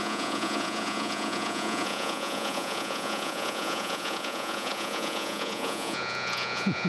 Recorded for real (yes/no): no